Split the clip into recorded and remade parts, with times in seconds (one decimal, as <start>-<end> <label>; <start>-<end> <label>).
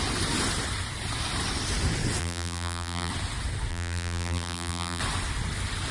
0.0-2.2 recorded; 2.2-3.1 remade; 3.1-3.7 recorded; 3.7-5.0 remade; 5.0-5.9 recorded